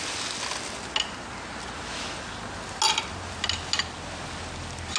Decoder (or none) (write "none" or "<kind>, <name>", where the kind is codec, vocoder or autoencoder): none